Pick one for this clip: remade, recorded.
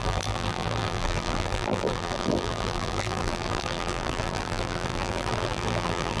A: remade